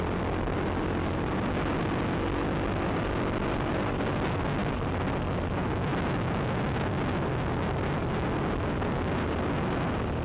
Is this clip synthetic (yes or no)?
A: no